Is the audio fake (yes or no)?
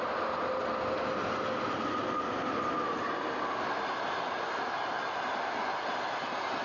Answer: no